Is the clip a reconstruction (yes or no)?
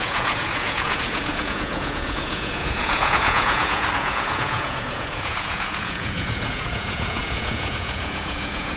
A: yes